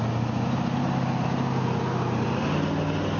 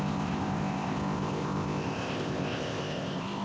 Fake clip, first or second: second